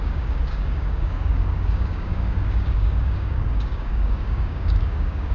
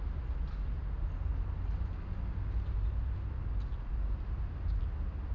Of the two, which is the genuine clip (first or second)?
second